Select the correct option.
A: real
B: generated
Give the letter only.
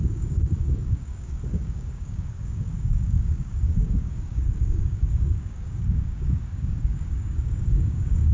B